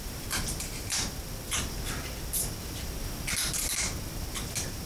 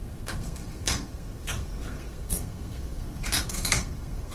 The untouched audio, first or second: first